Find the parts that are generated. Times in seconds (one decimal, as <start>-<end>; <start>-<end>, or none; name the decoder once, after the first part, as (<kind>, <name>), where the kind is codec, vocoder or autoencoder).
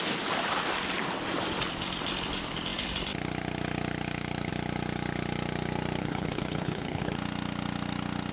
6.0-7.1 (codec, HILCodec)